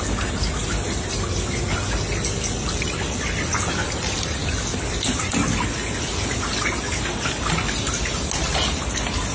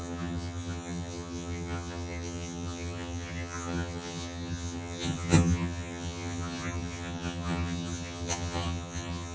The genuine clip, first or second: first